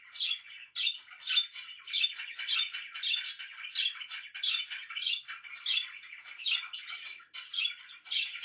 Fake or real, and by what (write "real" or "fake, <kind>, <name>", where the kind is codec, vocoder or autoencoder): real